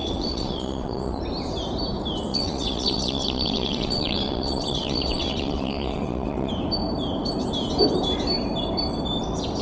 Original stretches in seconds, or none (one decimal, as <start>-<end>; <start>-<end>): 1.2-2.3; 6.5-9.6